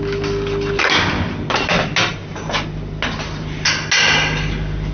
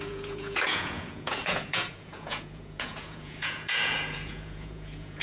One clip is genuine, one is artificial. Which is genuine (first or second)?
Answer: first